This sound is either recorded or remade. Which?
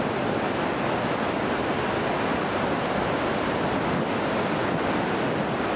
recorded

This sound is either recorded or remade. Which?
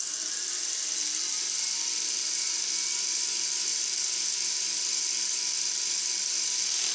recorded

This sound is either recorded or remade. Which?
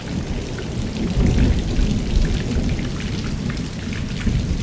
recorded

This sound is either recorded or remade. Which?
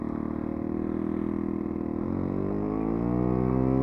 recorded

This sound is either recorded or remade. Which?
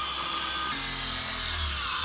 recorded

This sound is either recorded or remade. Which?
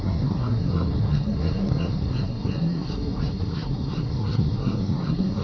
remade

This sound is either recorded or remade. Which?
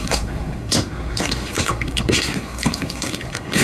remade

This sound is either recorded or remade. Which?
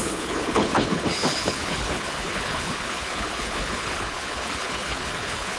remade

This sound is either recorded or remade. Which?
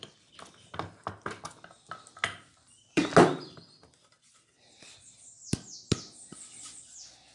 recorded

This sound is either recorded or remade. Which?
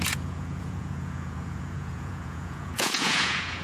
remade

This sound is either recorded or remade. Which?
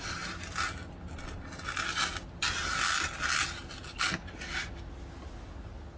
recorded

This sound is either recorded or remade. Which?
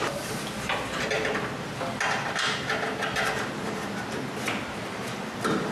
recorded